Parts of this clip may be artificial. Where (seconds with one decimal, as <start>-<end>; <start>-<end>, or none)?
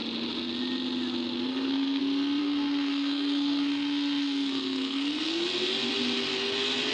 1.5-2.0; 2.4-5.5